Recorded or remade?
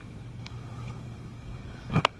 remade